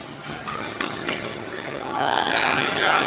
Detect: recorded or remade remade